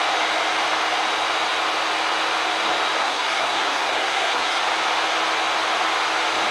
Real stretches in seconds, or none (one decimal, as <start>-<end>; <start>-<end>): 0.0-3.0; 4.6-6.5